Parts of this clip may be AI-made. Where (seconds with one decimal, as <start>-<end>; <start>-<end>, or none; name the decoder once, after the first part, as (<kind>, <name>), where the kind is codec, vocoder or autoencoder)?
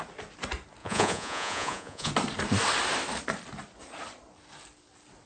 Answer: 0.8-2.1 (vocoder, Vocos)